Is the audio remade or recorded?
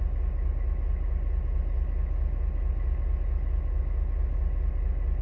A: recorded